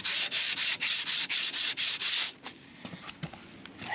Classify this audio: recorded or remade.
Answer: recorded